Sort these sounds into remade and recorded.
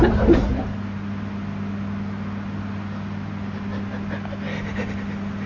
recorded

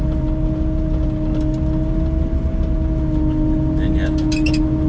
recorded